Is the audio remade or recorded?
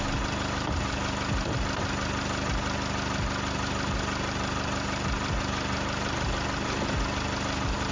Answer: recorded